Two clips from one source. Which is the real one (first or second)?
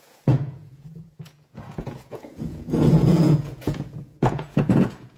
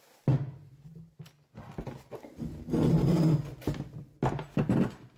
second